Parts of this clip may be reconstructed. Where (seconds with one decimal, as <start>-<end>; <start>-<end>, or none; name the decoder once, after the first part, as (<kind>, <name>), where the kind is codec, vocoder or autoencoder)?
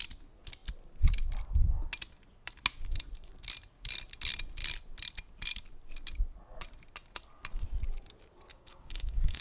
8.5-9.4 (codec, DAC)